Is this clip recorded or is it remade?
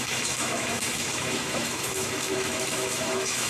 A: remade